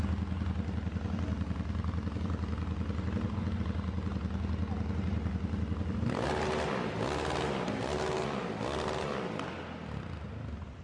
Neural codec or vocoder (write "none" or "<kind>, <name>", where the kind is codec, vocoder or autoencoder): none